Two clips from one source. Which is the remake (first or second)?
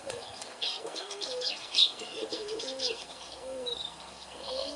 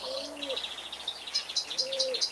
first